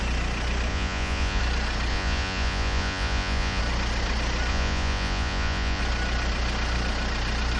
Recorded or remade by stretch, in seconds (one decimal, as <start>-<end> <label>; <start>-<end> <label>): 0.0-0.7 recorded; 0.7-1.4 remade; 1.4-1.9 recorded; 1.9-3.6 remade; 3.6-4.5 recorded; 4.5-5.8 remade; 5.8-7.6 recorded